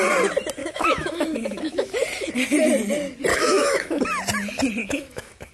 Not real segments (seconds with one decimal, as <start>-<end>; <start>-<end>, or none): 0.6-1.9; 3.3-4.0; 4.8-5.5